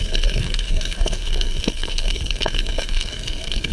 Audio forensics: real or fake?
fake